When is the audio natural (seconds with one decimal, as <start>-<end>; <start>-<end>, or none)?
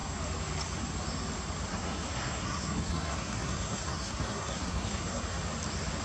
0.0-1.7; 5.2-6.0